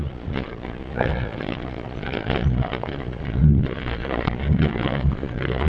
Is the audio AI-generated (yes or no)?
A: yes